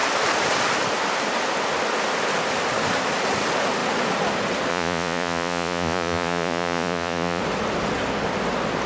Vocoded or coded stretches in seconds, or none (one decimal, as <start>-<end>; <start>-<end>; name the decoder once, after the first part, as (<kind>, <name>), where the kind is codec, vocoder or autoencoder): 4.7-7.4 (vocoder, Vocos)